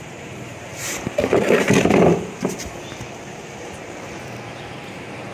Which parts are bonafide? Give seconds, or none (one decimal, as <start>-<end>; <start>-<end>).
none